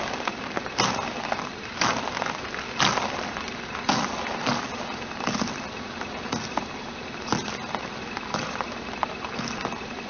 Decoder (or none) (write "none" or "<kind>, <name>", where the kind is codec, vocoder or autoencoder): none